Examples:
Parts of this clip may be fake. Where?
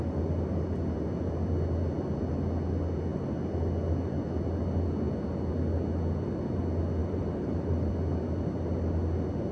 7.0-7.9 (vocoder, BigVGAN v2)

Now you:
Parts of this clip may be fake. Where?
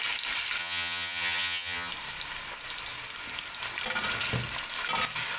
0.6-1.9 (vocoder, HiFi-GAN)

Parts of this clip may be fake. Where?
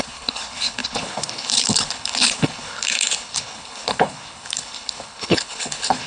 0.0-6.1 (codec, HILCodec)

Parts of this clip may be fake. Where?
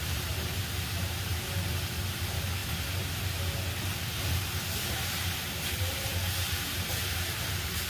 0.0-1.3 (vocoder, BigVGAN v2); 2.1-2.6; 3.8-7.9